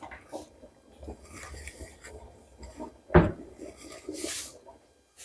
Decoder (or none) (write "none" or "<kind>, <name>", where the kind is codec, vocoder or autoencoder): none